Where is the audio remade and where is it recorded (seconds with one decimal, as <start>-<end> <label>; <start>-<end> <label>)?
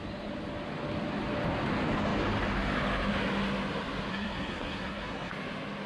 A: 0.0-4.1 recorded; 4.1-5.3 remade; 5.3-5.9 recorded